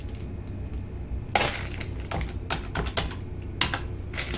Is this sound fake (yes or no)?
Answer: no